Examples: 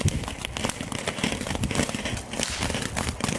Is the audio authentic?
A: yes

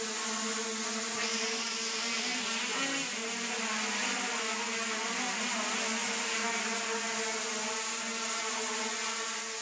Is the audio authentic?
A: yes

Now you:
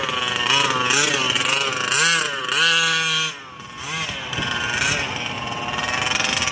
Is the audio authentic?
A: yes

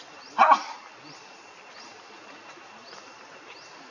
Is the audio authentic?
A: yes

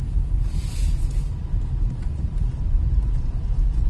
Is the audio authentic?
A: yes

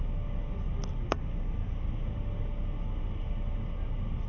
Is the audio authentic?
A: yes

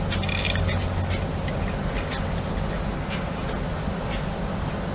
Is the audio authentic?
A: yes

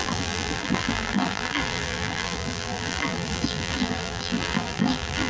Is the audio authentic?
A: no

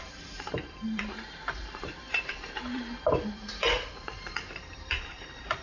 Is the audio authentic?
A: no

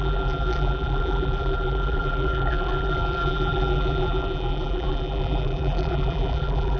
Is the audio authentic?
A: no